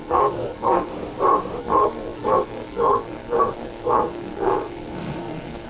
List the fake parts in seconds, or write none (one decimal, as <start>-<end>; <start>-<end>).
0.0-0.9; 1.6-5.7